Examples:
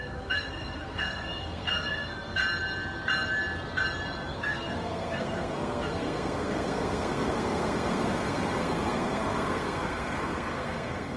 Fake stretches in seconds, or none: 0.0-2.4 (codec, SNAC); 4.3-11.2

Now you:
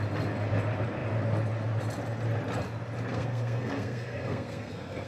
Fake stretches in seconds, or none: 3.1-5.1 (codec, SNAC)